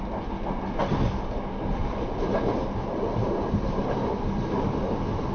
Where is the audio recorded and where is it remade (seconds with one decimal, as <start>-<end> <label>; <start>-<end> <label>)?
0.0-1.8 recorded; 1.8-5.3 remade